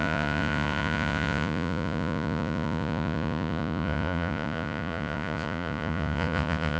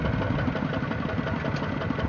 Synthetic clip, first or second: first